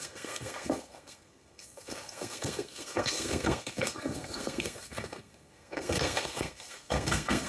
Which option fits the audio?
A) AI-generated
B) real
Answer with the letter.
A